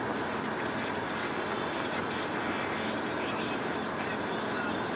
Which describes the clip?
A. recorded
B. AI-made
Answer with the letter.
A